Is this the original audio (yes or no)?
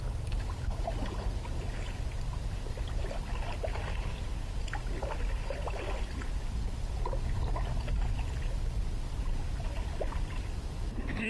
yes